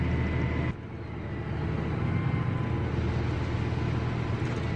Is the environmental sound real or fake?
real